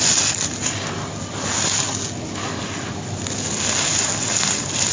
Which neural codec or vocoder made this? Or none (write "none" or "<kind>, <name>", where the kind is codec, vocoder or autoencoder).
none